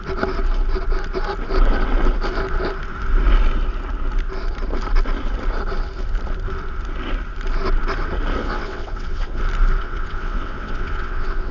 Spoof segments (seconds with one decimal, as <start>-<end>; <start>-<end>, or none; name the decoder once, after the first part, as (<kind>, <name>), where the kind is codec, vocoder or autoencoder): 8.4-9.4 (vocoder, WaveNeXt); 9.8-11.5